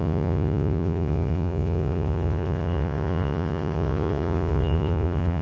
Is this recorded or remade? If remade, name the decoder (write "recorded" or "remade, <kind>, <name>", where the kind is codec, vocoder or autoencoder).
remade, vocoder, Vocos